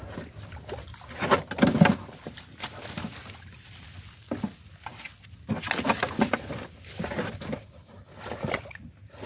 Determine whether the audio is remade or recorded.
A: recorded